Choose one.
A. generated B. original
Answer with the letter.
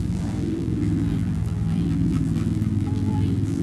A